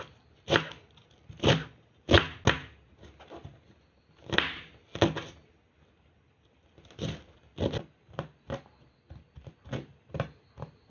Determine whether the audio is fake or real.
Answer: real